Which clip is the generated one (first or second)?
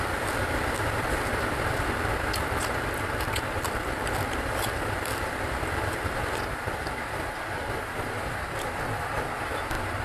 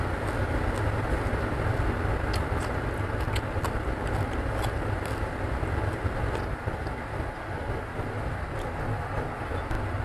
first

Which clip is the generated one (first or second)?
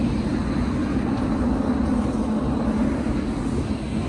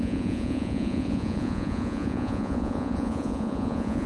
second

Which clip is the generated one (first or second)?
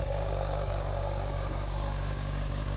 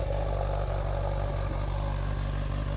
first